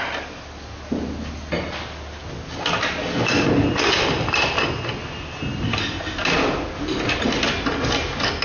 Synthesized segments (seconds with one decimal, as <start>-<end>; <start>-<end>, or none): none